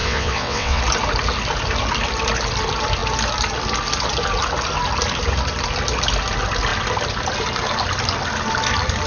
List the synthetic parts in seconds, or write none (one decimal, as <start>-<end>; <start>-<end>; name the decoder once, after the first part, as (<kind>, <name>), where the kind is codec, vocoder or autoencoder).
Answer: 0.0-0.8 (vocoder, WaveNeXt)